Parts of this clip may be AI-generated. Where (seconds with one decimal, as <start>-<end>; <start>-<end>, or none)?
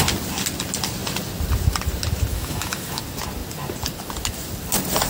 2.3-3.0